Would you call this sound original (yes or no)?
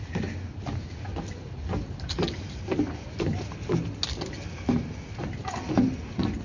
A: yes